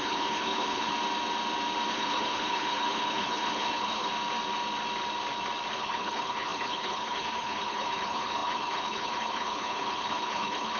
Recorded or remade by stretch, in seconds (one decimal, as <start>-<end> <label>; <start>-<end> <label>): 0.0-0.9 remade; 0.9-1.9 recorded; 1.9-4.1 remade; 4.1-5.7 recorded; 5.7-10.8 remade